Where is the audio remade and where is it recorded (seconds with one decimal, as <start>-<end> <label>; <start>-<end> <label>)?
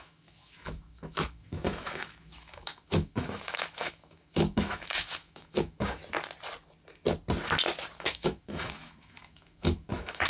0.0-6.0 remade; 6.0-8.0 recorded; 8.0-10.3 remade